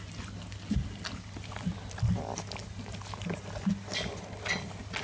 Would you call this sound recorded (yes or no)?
yes